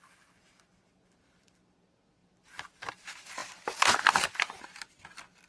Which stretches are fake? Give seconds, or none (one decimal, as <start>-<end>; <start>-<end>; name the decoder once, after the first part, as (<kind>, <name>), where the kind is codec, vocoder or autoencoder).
2.2-2.9 (vocoder, BigVGAN v2)